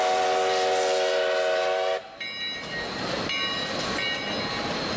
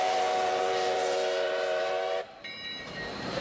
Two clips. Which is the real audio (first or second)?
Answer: first